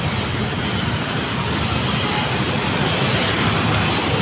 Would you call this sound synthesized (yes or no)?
no